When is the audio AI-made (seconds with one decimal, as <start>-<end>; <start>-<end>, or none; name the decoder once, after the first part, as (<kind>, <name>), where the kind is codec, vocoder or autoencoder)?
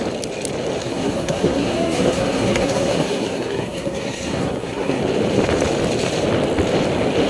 0.8-5.0 (codec, SNAC)